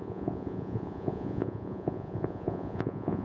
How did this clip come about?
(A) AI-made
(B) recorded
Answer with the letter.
A